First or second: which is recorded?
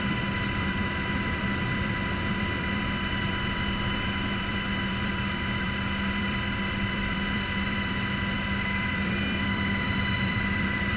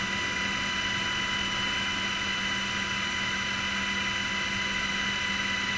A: second